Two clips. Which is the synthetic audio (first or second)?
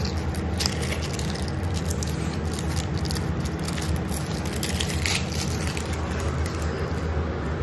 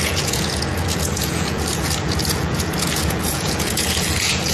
second